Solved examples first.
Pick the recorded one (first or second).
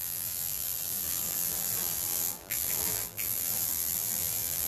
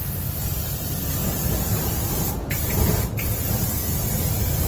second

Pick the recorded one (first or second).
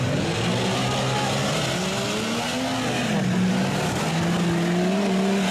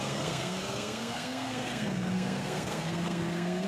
first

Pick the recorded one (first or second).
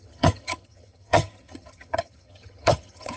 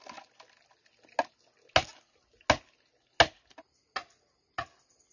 second